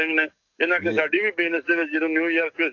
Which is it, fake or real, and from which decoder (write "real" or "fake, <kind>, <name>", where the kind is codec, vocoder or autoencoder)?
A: fake, codec, DAC